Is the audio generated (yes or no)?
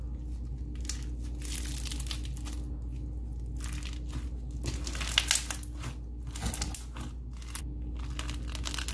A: no